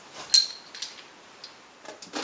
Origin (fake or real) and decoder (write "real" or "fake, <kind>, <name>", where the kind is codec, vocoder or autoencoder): real